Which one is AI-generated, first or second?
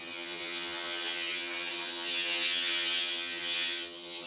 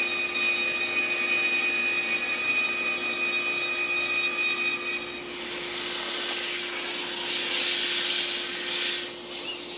first